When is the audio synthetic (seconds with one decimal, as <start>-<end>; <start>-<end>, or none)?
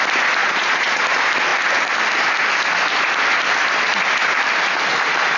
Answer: 0.4-1.0